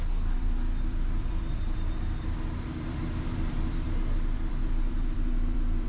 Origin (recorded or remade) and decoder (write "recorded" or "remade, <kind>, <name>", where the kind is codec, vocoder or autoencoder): remade, vocoder, BigVGAN v2